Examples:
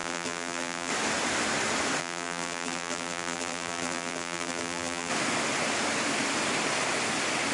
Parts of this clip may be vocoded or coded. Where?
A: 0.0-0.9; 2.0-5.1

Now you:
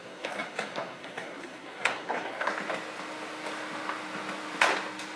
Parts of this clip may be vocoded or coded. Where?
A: 0.0-2.5

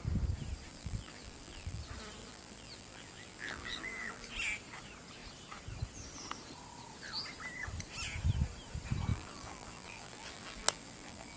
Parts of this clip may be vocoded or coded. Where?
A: 0.7-1.8; 2.2-4.3; 9.1-11.4